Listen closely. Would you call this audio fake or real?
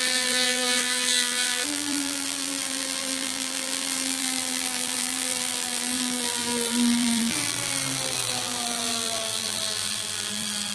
fake